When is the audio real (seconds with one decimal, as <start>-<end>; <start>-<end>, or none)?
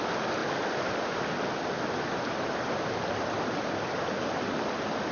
0.0-5.1